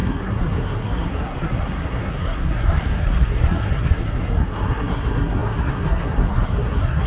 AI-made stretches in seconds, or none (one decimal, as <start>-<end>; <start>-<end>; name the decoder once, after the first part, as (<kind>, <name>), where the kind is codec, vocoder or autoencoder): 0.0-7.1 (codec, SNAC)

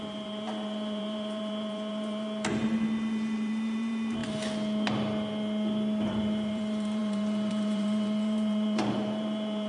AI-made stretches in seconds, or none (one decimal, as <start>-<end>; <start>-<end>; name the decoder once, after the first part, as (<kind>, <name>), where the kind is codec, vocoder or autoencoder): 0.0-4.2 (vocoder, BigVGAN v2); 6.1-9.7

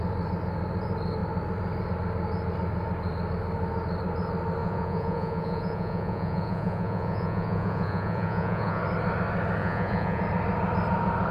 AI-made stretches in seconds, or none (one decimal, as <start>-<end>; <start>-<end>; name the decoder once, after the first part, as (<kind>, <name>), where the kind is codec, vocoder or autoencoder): 4.6-8.8 (vocoder, Vocos); 9.6-10.2